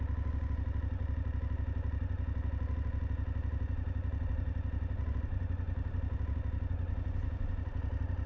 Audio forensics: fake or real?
real